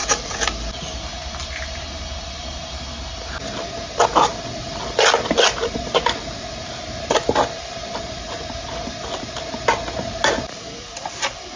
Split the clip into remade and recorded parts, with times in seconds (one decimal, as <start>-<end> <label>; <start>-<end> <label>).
0.0-1.0 remade; 1.0-4.3 recorded; 4.3-8.0 remade; 8.0-11.6 recorded

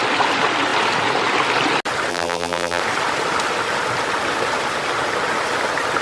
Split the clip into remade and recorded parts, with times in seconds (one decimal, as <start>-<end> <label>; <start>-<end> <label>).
0.0-2.1 recorded; 2.1-2.8 remade; 2.8-6.0 recorded